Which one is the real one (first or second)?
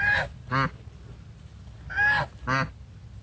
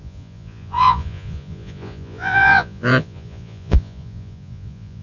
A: first